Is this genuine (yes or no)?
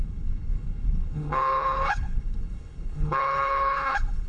no